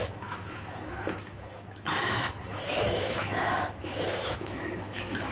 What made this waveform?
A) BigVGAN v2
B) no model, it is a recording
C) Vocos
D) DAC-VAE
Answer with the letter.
D